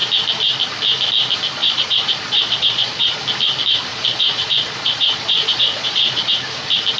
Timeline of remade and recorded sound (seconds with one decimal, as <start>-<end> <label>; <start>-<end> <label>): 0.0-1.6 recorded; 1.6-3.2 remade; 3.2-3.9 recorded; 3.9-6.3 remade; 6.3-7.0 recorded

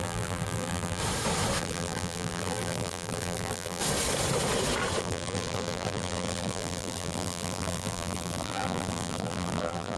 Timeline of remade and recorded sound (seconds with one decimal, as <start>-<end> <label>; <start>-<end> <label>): 0.0-1.0 remade; 1.0-1.6 recorded; 1.6-3.8 remade; 3.8-5.0 recorded; 5.0-10.0 remade

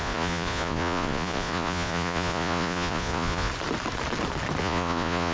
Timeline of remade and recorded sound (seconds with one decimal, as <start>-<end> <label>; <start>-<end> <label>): 0.0-3.5 remade; 3.5-4.6 recorded; 4.6-5.3 remade

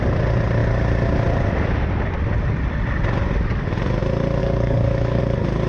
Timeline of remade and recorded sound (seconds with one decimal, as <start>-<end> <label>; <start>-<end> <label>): 0.0-4.4 recorded; 4.4-5.2 remade; 5.2-5.7 recorded

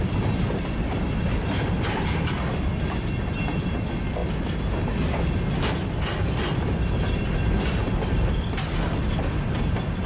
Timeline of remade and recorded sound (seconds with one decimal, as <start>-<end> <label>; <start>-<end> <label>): 0.0-10.1 recorded

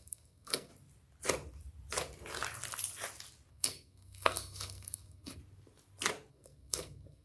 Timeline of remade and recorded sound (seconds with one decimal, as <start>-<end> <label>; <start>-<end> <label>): 0.0-0.7 remade; 0.7-3.5 recorded; 3.5-5.4 remade; 5.4-6.3 recorded; 6.3-7.2 remade

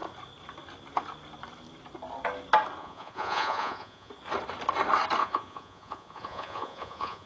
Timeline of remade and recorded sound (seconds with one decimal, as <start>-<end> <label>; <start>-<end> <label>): 0.0-2.8 recorded; 2.8-4.1 remade; 4.1-5.2 recorded; 5.2-7.3 remade

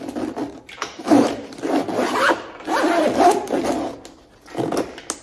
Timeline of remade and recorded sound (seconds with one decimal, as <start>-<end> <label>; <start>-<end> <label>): 0.0-5.2 recorded